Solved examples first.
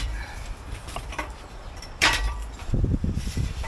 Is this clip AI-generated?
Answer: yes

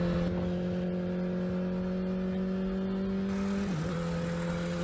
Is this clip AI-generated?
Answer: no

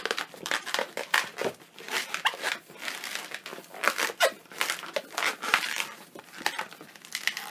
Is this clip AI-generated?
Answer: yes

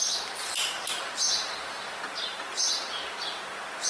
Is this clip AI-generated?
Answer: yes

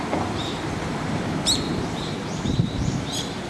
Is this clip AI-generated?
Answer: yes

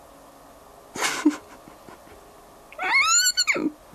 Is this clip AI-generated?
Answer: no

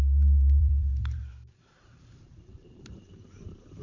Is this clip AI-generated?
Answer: yes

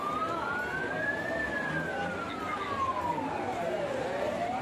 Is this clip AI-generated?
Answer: no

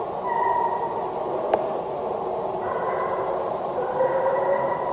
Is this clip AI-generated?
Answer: yes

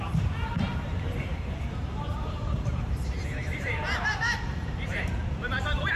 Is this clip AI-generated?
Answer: yes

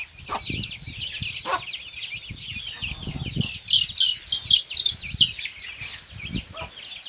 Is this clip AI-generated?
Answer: no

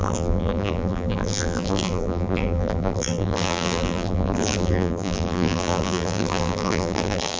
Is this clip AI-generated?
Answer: yes